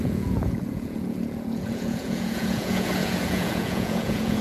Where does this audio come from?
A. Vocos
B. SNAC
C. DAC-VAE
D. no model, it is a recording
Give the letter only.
A